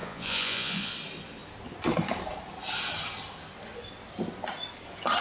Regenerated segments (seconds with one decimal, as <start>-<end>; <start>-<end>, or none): 0.0-0.9